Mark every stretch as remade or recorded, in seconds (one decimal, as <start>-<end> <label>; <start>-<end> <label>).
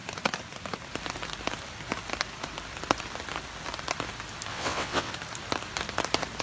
0.0-4.5 recorded; 4.5-5.1 remade; 5.1-6.4 recorded